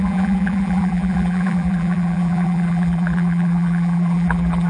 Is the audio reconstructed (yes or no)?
yes